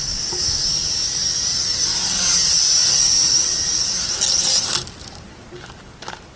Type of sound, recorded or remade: recorded